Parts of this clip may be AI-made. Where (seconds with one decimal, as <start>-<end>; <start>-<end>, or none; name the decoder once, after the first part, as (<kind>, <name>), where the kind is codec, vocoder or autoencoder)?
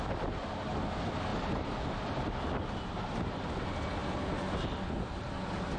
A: none